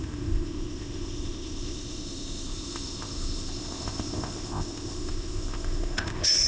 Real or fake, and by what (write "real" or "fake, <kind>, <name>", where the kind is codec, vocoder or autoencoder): fake, codec, ZipCodec